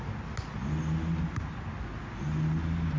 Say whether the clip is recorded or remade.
recorded